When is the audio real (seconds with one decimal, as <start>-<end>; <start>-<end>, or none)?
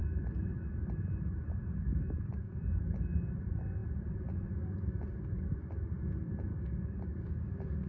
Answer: 0.0-1.9; 2.6-6.5; 7.5-7.9